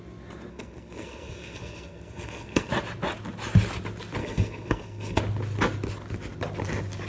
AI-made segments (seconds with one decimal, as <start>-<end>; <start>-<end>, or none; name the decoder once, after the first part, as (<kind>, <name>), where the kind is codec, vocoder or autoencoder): 0.5-2.7 (codec, SNAC); 4.2-5.2